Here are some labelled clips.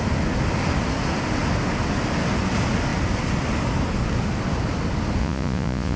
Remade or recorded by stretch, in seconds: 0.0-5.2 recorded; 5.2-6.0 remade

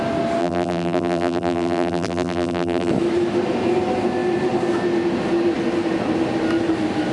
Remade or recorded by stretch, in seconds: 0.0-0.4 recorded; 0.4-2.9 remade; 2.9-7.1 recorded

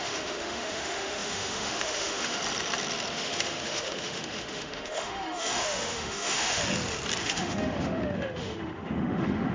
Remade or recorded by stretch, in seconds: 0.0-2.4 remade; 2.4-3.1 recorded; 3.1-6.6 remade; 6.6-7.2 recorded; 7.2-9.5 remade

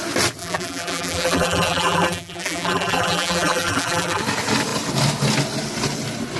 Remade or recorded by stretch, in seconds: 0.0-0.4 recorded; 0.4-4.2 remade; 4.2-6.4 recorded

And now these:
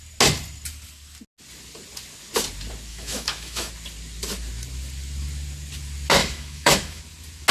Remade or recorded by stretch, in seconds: 0.0-2.9 recorded; 2.9-3.7 remade; 3.7-6.2 recorded; 6.2-7.0 remade; 7.0-7.5 recorded

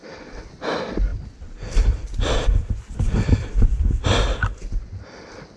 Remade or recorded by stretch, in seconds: 0.0-1.1 recorded; 1.1-3.9 remade; 3.9-5.6 recorded

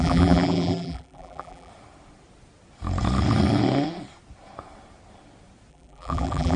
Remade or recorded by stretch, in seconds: 0.0-1.7 remade; 1.7-5.7 recorded; 5.7-6.6 remade

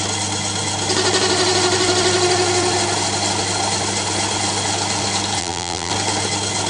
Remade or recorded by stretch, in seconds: 0.0-5.4 recorded; 5.4-5.9 remade; 5.9-6.7 recorded